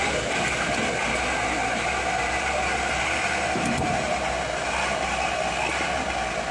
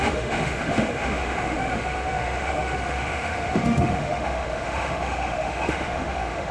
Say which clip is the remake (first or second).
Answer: second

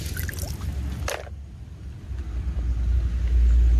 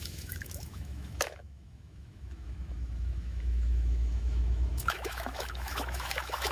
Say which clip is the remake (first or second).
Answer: second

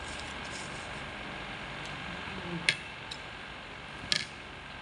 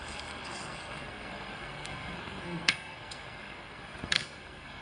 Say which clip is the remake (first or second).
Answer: second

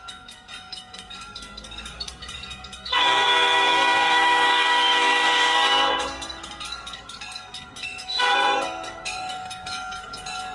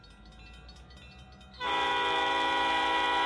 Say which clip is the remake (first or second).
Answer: first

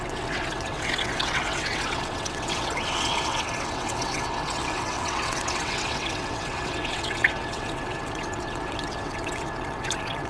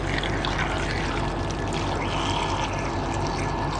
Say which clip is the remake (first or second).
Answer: first